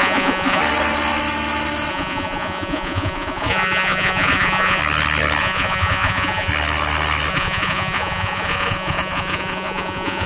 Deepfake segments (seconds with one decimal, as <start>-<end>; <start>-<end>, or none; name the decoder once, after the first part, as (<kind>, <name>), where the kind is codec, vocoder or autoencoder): 0.0-0.6 (vocoder, Vocos); 1.9-4.8; 5.4-6.5; 7.3-10.3